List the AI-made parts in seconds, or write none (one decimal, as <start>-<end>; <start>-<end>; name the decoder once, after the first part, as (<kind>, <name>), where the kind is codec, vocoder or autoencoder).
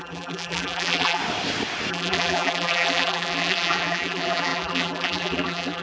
0.0-1.2 (vocoder, BigVGAN v2); 1.9-5.8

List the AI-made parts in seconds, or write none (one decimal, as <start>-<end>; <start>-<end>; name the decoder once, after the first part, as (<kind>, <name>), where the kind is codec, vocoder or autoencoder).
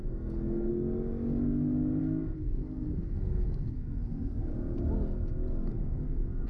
0.0-0.7 (codec, SNAC); 2.0-4.5; 5.7-6.5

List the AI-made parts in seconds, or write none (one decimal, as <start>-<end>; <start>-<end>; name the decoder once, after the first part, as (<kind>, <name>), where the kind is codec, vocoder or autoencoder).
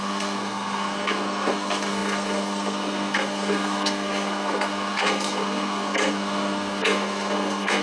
0.0-7.8 (codec, SNAC)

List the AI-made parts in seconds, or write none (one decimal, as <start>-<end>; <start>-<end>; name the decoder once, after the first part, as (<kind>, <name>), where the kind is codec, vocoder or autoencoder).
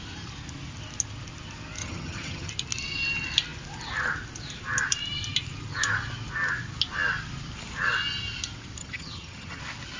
1.8-2.5 (vocoder, HiFi-GAN); 8.8-9.6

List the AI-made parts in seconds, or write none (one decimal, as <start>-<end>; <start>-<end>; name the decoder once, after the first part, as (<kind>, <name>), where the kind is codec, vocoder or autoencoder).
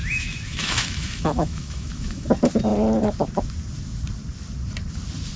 0.0-2.3 (autoencoder, DAC-VAE)